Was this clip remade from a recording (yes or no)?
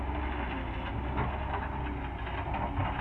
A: no